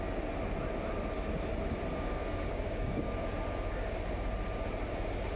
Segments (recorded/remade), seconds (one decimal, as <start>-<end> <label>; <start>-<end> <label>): 0.0-1.9 recorded; 1.9-3.1 remade; 3.1-5.4 recorded